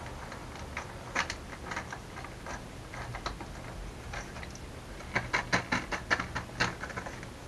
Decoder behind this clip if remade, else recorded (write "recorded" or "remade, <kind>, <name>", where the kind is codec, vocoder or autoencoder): recorded